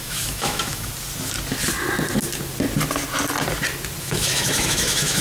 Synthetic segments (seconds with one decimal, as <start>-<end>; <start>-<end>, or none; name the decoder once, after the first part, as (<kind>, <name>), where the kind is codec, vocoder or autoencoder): 0.0-0.9 (autoencoder, DAC-VAE); 4.0-5.2